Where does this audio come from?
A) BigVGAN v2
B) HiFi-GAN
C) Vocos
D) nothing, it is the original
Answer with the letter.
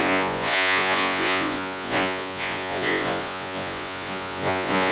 C